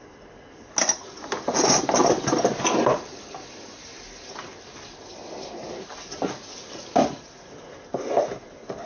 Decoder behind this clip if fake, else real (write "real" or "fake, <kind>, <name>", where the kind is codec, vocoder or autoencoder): real